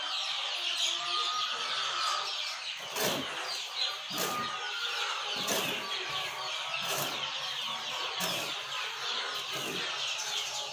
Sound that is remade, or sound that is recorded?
recorded